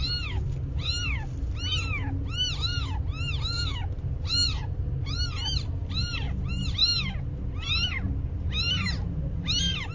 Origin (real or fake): real